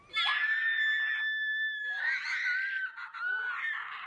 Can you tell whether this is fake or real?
real